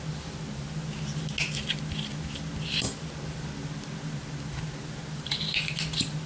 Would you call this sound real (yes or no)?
yes